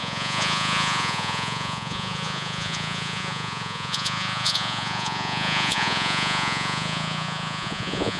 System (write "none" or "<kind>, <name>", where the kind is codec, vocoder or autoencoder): vocoder, Vocos